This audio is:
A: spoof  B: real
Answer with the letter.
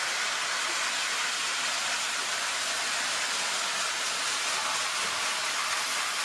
B